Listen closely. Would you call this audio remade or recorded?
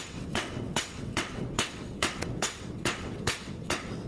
remade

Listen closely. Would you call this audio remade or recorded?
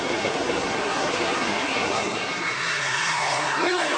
remade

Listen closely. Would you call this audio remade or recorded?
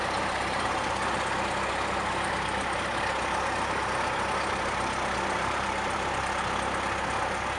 recorded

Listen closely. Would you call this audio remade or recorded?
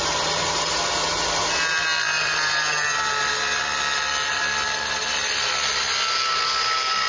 recorded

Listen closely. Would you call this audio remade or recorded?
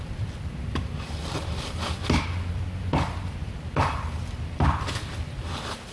recorded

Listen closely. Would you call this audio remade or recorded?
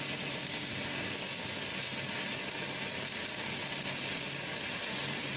recorded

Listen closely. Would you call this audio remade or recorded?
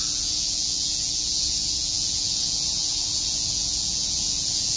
remade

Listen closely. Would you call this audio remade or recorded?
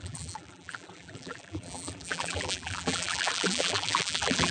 remade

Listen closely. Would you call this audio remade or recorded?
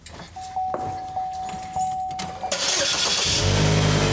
recorded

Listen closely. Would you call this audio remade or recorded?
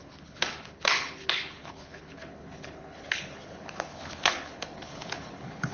remade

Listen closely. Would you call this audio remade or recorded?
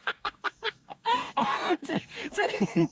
remade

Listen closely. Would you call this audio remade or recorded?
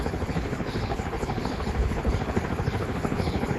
remade